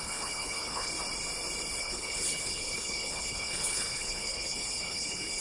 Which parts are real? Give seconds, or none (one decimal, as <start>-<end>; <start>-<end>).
0.9-1.8